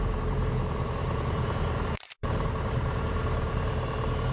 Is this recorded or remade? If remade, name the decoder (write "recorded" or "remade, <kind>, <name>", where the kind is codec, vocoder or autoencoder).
remade, vocoder, BigVGAN v2